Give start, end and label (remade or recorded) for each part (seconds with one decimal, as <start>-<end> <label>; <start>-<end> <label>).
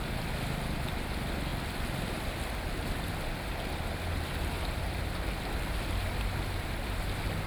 0.0-7.5 recorded